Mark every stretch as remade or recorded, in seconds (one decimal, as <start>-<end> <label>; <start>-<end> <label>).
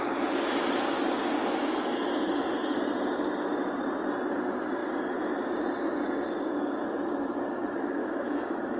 0.0-1.2 recorded; 1.2-2.8 remade; 2.8-8.0 recorded; 8.0-8.8 remade